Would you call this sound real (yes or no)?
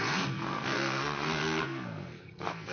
no